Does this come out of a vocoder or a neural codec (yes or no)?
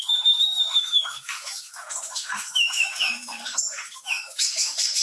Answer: yes